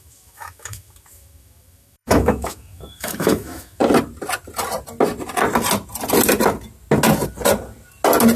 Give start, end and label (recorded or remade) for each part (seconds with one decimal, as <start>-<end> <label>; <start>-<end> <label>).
0.0-3.8 remade; 3.8-8.4 recorded

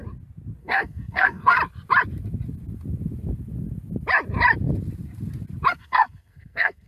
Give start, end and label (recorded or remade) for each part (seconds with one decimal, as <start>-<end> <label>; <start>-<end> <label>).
0.0-0.6 recorded; 0.6-1.6 remade; 1.6-5.7 recorded; 5.7-6.9 remade

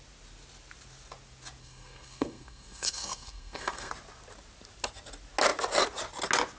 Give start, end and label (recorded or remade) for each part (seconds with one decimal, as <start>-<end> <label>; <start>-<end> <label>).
0.0-1.6 recorded; 1.6-3.9 remade; 3.9-6.6 recorded

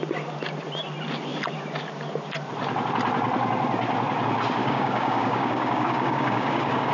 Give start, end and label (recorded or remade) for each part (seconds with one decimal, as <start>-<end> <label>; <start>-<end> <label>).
0.0-4.6 recorded; 4.6-6.9 remade

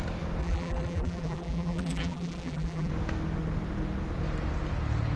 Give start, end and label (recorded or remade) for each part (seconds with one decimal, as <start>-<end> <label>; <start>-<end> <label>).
0.0-0.4 recorded; 0.4-2.9 remade; 2.9-5.2 recorded

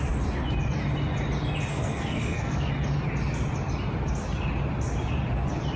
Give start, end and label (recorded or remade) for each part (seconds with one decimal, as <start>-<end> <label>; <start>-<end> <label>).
0.0-1.7 recorded; 1.7-2.7 remade; 2.7-5.8 recorded

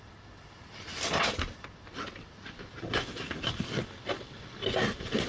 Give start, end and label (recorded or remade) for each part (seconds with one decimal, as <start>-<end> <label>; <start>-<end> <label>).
0.0-5.3 recorded